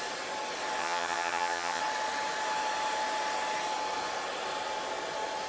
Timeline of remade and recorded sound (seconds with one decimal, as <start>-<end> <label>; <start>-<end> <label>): 0.0-0.8 recorded; 0.8-1.8 remade; 1.8-5.5 recorded